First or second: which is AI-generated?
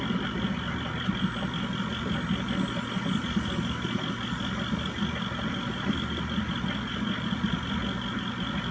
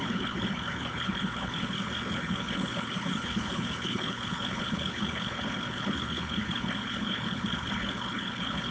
second